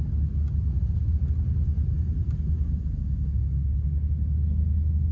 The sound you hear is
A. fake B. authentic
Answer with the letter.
B